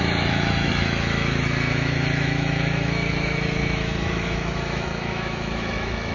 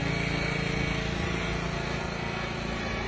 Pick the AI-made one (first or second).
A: first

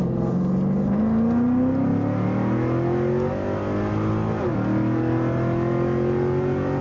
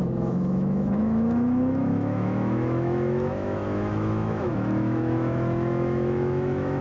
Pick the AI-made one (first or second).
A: second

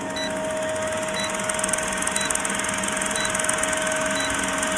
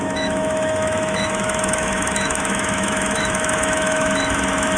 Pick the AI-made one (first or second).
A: second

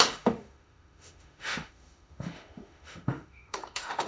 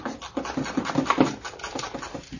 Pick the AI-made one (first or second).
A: first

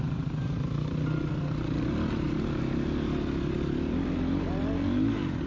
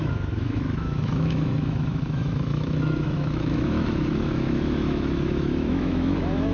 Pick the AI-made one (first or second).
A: second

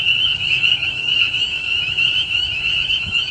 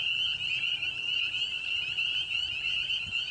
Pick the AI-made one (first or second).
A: first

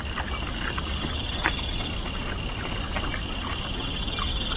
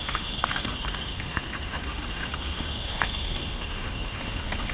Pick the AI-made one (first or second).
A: second